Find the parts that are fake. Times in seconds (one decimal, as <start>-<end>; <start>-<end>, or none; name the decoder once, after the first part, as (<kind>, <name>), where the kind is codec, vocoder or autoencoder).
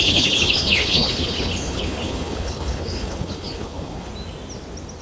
0.0-4.1 (codec, HILCodec)